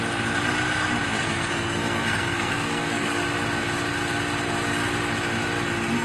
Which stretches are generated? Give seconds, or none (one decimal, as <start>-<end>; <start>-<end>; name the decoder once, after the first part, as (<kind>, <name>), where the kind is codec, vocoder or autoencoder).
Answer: 1.2-3.2 (codec, SNAC)